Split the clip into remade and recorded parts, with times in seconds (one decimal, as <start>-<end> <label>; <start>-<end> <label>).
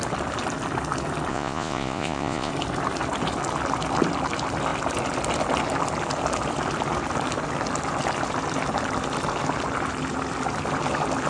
0.0-1.3 recorded; 1.3-2.5 remade; 2.5-11.3 recorded